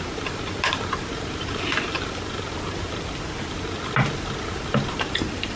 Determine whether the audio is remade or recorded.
remade